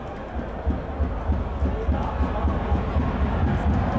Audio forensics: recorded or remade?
recorded